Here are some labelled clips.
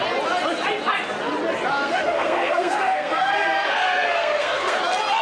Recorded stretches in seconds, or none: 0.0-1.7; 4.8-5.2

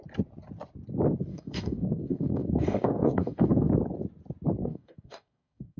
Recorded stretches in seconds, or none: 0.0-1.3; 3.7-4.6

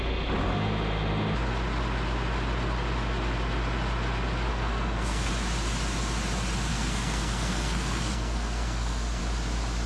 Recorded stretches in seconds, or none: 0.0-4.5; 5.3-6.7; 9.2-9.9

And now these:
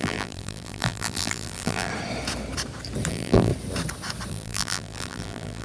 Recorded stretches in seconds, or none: 1.9-3.1; 3.5-4.3

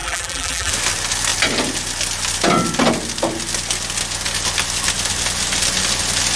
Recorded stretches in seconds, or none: 0.7-6.4